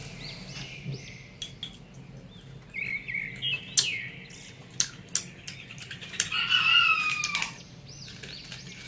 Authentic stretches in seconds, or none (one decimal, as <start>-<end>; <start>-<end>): 0.0-8.9